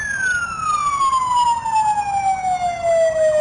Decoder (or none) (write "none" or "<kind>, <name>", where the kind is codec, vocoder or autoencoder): none